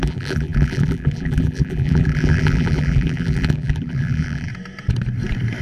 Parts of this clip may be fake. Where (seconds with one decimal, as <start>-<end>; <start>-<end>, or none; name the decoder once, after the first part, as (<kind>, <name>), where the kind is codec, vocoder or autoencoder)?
0.0-4.5 (vocoder, BigVGAN v2)